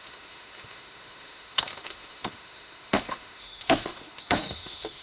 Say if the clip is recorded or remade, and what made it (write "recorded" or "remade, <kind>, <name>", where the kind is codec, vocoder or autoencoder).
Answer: remade, autoencoder, DAC-VAE